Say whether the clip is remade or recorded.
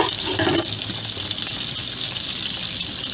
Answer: remade